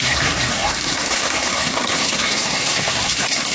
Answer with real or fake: fake